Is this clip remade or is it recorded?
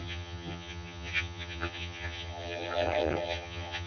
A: remade